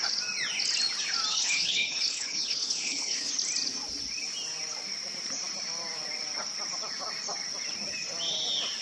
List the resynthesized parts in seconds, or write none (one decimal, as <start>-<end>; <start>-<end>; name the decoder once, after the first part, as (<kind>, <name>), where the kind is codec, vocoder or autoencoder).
1.3-3.3 (codec, HILCodec)